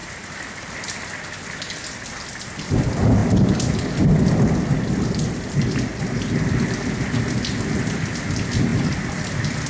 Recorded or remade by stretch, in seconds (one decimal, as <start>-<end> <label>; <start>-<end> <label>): 0.0-8.7 recorded; 8.7-9.7 remade